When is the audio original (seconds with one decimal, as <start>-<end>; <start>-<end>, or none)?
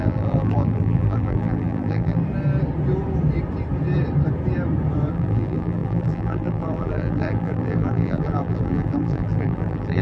2.2-5.1